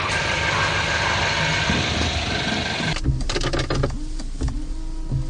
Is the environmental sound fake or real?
real